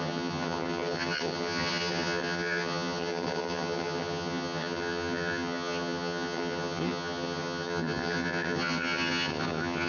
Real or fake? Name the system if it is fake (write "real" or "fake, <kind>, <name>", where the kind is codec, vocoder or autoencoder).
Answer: fake, vocoder, HiFi-GAN